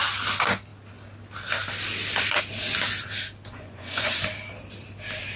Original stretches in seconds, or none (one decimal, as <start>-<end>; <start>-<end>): 0.0-3.5; 4.2-5.4